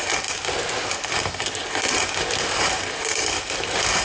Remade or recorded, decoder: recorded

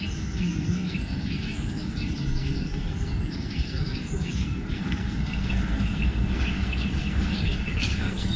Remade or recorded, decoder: remade, codec, SNAC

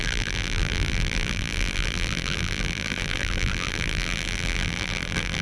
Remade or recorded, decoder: remade, vocoder, BigVGAN v2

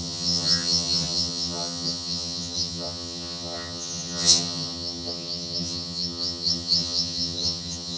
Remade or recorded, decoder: remade, vocoder, HiFi-GAN